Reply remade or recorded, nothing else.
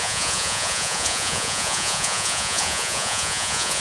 remade